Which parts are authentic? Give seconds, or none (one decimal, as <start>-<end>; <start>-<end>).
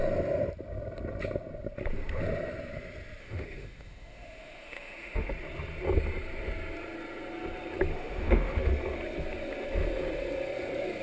0.0-3.2; 5.3-7.9; 8.7-11.0